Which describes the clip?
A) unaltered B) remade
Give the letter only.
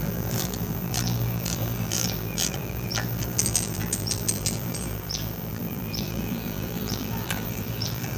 B